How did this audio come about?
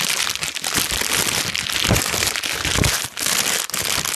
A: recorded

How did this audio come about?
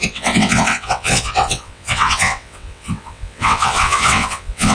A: remade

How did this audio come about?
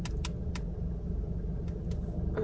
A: recorded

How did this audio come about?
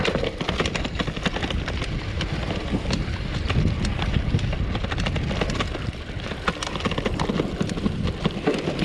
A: recorded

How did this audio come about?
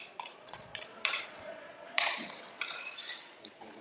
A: remade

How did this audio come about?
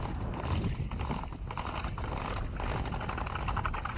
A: recorded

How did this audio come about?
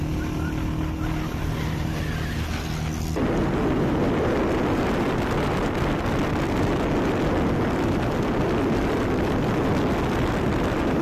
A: recorded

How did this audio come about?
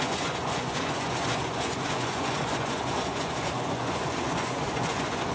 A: remade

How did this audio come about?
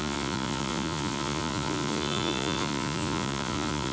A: remade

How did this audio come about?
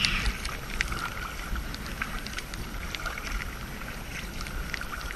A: recorded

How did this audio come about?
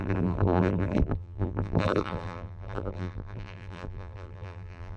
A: remade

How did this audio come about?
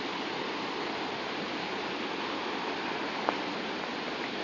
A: remade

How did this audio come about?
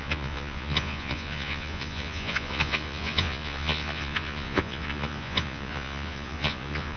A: remade